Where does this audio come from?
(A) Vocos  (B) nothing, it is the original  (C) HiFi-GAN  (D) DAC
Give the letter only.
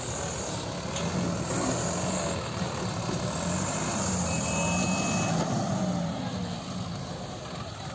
B